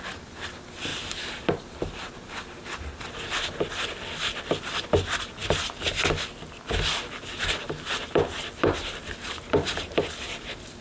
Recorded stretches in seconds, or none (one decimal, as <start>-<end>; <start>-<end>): 0.0-10.8